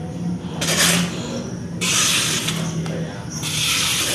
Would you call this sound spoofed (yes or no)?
no